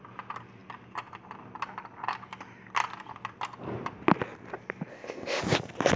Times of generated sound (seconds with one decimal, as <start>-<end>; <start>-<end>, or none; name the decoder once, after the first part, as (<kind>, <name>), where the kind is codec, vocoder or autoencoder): 4.9-5.4 (codec, ZipCodec)

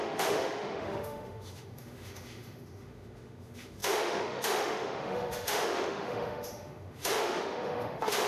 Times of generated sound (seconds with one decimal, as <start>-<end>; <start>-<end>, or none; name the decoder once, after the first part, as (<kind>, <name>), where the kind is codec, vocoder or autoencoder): 0.0-8.3 (autoencoder, DAC-VAE)

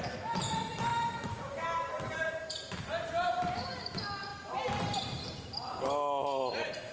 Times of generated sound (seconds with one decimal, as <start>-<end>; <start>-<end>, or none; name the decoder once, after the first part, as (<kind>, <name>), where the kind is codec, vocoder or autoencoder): 0.9-2.4 (vocoder, BigVGAN v2)

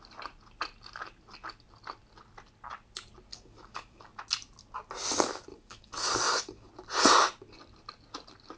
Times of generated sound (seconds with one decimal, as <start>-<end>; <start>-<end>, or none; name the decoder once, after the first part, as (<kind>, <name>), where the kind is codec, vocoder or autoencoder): 3.3-4.1 (codec, DAC); 5.5-6.7

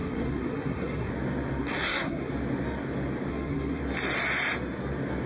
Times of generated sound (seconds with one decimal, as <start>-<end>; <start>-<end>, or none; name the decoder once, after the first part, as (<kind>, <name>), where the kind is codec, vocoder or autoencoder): 0.0-1.1 (codec, SNAC); 1.6-2.3; 3.3-3.8

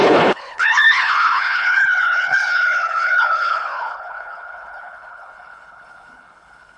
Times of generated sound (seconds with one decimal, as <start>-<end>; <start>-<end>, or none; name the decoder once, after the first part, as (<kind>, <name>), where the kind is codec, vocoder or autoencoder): 0.0-6.8 (codec, HILCodec)